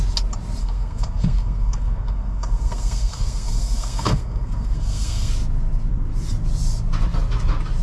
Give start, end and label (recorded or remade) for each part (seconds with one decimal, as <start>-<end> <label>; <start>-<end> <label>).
0.0-0.6 recorded; 0.6-5.3 remade; 5.3-7.8 recorded